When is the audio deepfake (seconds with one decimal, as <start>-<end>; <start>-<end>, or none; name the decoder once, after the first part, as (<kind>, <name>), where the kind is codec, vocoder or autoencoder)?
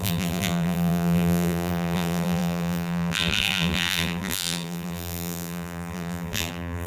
0.0-6.9 (vocoder, BigVGAN v2)